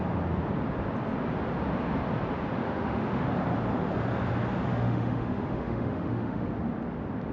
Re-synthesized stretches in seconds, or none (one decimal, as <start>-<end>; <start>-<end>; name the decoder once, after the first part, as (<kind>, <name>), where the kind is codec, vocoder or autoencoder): 2.6-3.3 (autoencoder, DAC-VAE); 4.7-6.5